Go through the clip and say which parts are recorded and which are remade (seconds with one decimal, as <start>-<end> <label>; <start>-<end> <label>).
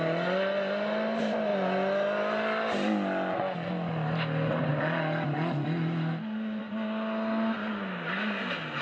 0.0-8.8 recorded